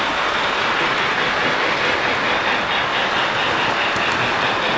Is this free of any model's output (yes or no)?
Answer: yes